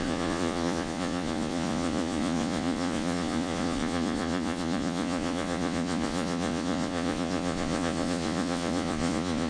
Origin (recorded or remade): remade